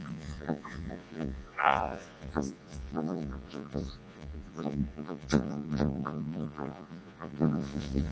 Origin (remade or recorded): remade